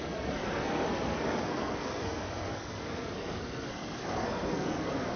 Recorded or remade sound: remade